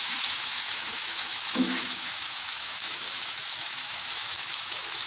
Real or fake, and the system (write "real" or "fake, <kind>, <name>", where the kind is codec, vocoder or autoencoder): fake, autoencoder, DAC-VAE